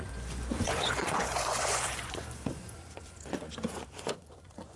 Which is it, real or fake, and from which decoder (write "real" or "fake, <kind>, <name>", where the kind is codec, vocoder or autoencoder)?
fake, vocoder, Vocos